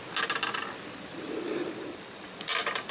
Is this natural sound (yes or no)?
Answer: yes